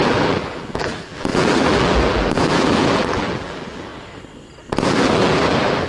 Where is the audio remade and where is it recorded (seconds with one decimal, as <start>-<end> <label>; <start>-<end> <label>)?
0.0-3.9 remade; 3.9-4.8 recorded; 4.8-5.9 remade